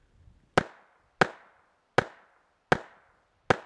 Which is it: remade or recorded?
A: recorded